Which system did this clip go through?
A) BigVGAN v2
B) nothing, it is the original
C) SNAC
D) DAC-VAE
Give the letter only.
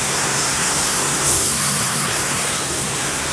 C